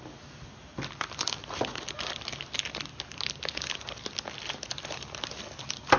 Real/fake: real